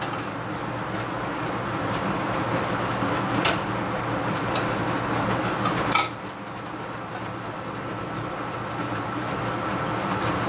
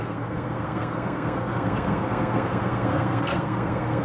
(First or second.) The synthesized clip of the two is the second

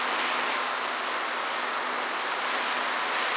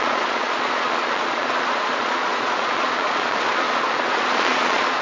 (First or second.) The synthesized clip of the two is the second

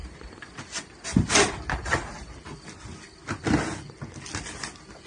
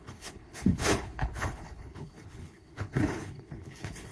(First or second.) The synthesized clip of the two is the second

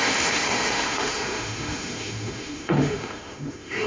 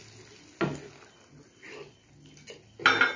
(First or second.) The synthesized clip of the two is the first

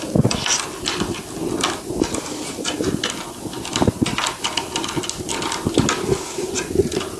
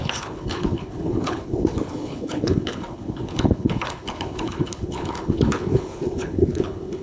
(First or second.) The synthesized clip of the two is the second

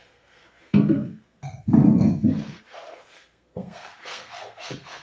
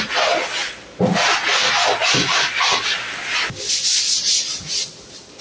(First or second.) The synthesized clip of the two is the first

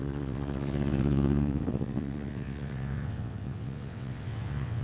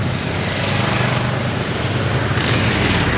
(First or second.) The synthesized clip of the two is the first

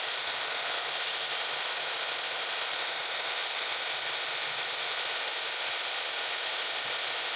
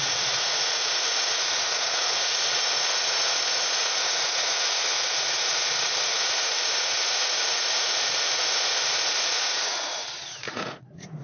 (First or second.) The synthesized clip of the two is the second